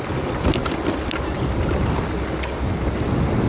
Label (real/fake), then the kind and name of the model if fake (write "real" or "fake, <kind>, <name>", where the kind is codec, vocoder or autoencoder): fake, vocoder, BigVGAN v2